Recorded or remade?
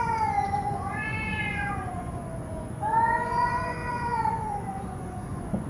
remade